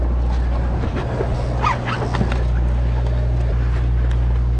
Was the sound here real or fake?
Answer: real